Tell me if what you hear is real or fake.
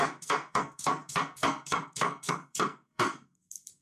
fake